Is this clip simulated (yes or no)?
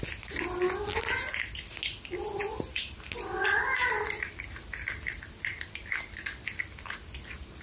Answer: no